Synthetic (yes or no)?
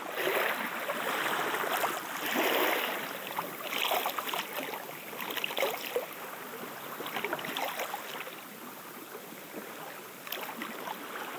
no